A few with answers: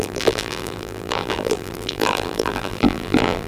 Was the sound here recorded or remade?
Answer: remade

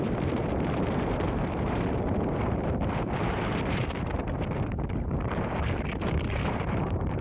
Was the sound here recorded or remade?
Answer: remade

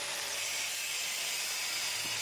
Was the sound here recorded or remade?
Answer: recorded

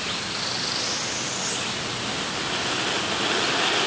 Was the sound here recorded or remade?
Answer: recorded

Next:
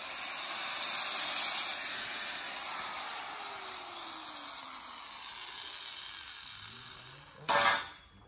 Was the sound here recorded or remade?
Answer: recorded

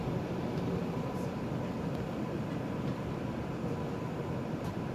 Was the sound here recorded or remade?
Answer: remade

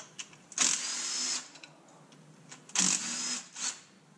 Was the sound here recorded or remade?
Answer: recorded